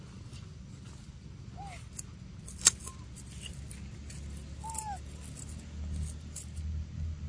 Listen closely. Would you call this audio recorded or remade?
recorded